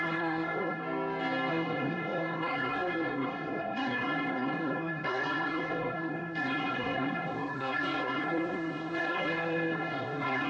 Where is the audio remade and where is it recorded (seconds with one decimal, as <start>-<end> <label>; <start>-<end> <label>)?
0.0-0.8 remade; 0.8-1.5 recorded; 1.5-10.5 remade